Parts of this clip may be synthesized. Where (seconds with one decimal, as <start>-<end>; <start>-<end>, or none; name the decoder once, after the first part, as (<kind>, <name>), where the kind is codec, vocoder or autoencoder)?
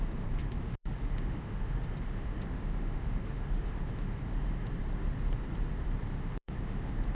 0.4-4.7 (autoencoder, DAC-VAE); 6.1-7.1